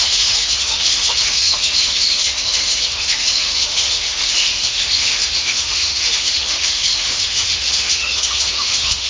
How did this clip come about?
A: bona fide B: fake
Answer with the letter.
B